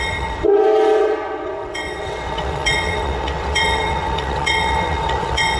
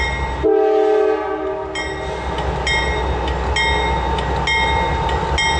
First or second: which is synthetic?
first